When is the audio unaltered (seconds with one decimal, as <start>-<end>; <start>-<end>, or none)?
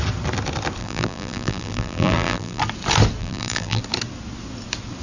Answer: 0.0-0.8; 2.6-3.2; 3.8-5.0